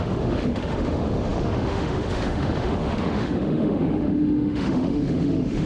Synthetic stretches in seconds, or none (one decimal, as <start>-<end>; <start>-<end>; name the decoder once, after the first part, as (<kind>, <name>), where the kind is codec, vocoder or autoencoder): 0.0-5.7 (autoencoder, DAC-VAE)